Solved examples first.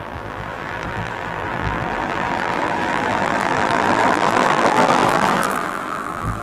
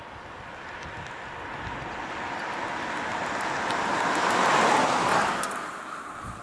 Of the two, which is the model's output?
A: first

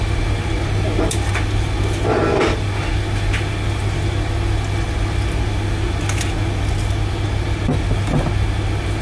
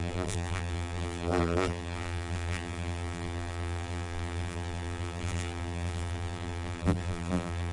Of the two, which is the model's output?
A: second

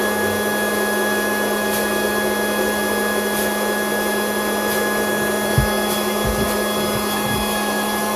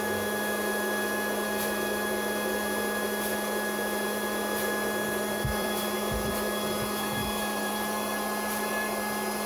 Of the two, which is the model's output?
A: second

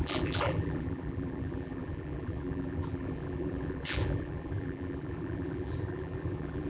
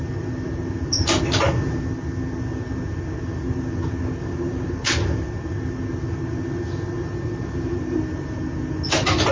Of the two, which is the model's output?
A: first